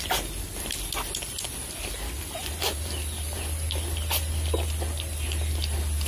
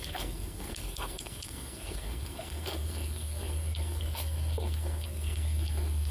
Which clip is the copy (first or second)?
second